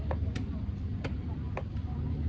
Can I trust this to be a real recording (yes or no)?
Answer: yes